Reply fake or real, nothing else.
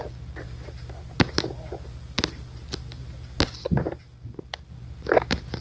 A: real